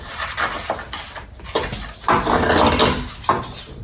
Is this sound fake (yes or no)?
no